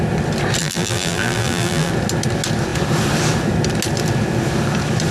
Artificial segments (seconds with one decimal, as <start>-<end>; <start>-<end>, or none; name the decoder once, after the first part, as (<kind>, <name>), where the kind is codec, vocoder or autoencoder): 0.6-1.9 (vocoder, BigVGAN v2)